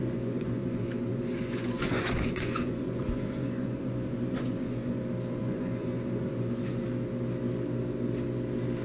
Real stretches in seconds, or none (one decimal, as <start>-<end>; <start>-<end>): 5.0-5.4; 6.8-8.8